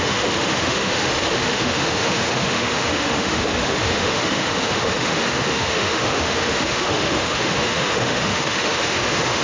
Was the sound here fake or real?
fake